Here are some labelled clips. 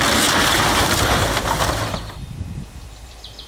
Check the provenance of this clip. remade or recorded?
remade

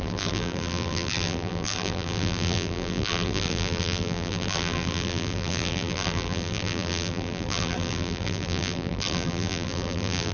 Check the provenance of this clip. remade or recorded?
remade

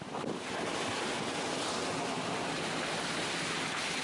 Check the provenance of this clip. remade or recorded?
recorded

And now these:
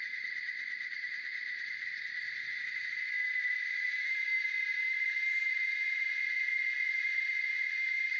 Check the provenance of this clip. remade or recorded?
remade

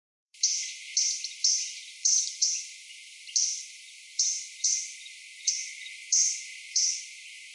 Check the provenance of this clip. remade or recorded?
remade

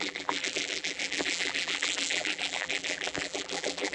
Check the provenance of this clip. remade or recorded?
remade